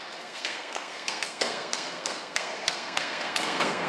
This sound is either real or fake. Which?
fake